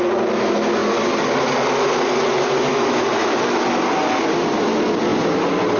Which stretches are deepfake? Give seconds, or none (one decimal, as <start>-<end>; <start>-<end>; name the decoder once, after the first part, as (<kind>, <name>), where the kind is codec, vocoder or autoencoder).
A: 2.7-3.6 (autoencoder, DAC-VAE)